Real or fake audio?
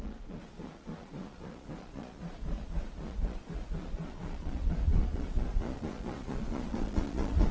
fake